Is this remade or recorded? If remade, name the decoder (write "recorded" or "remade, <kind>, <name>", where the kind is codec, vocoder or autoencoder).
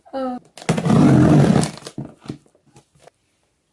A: recorded